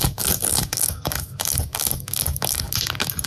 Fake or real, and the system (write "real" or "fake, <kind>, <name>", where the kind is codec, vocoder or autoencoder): fake, codec, DAC